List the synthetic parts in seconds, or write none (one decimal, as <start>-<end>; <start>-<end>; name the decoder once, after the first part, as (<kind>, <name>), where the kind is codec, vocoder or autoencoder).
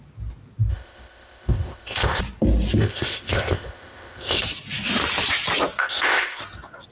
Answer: 0.7-2.2 (codec, ZipCodec); 2.8-4.4; 5.8-6.4